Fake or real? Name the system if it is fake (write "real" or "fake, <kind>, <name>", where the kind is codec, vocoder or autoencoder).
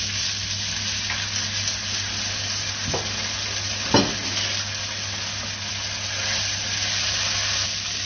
real